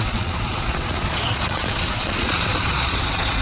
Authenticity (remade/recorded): remade